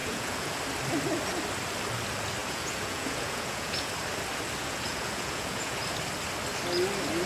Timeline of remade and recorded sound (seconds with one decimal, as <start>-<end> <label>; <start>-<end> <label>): 0.0-0.6 remade; 0.6-2.4 recorded; 2.4-3.9 remade; 3.9-4.6 recorded; 4.6-5.8 remade; 5.8-7.3 recorded

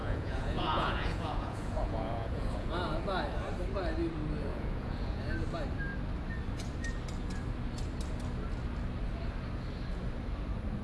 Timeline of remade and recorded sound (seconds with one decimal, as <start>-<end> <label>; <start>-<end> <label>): 0.0-2.7 remade; 2.7-4.5 recorded; 4.5-5.2 remade; 5.2-10.8 recorded

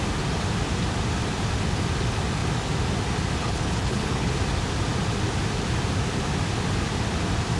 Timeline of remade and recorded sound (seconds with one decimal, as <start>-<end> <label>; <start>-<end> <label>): 0.0-3.4 recorded; 3.4-4.3 remade; 4.3-7.6 recorded

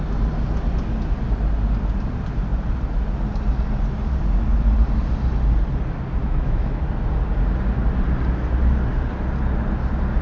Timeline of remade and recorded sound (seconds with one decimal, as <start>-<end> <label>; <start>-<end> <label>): 0.0-6.2 recorded; 6.2-6.8 remade; 6.8-10.2 recorded

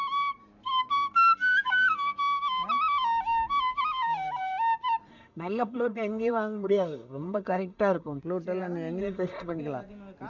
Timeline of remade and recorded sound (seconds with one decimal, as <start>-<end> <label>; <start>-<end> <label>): 0.0-5.1 recorded; 5.1-8.2 remade; 8.2-9.0 recorded; 9.0-9.6 remade; 9.6-10.3 recorded

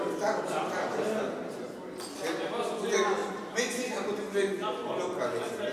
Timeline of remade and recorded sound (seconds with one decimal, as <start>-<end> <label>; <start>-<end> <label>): 0.0-5.7 recorded

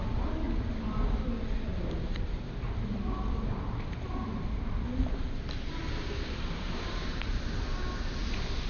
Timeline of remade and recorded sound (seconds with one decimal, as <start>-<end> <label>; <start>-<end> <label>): 0.0-1.7 recorded; 1.7-2.5 remade; 2.5-6.0 recorded; 6.0-7.8 remade; 7.8-8.7 recorded

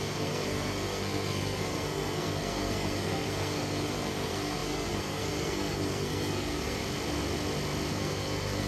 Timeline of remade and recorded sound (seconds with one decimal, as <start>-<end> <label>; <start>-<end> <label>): 0.0-6.8 remade; 6.8-7.9 recorded; 7.9-8.7 remade